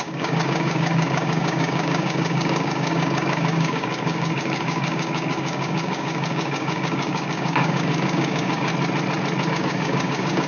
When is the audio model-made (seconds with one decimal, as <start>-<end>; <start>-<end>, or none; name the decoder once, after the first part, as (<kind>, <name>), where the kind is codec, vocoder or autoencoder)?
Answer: 0.0-8.7 (codec, DAC); 9.5-10.5